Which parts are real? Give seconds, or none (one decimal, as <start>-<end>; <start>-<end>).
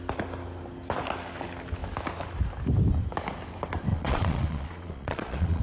0.0-3.9